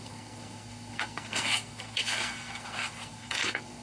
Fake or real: fake